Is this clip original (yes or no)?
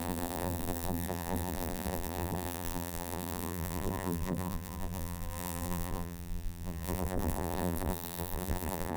no